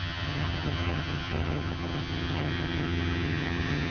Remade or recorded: remade